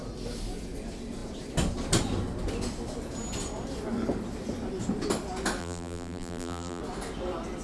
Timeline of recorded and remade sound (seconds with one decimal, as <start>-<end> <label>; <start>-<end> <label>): 0.0-5.6 recorded; 5.6-6.8 remade; 6.8-7.6 recorded